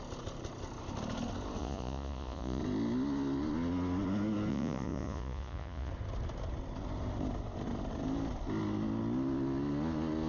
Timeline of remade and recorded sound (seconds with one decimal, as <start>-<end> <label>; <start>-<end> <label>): 0.0-1.6 recorded; 1.6-2.6 remade; 2.6-4.5 recorded; 4.5-5.9 remade; 5.9-10.3 recorded